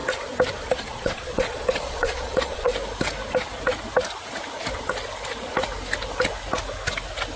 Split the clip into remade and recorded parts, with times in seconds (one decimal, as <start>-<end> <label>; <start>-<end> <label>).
0.0-0.9 recorded; 0.9-2.7 remade; 2.7-7.4 recorded